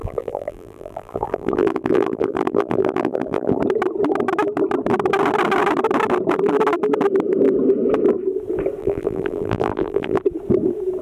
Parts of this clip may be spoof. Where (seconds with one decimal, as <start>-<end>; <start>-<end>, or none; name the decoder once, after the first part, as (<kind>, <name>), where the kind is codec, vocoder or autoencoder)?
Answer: 0.0-3.6 (vocoder, BigVGAN v2); 8.8-10.2